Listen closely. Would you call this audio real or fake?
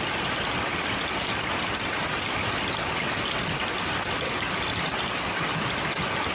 real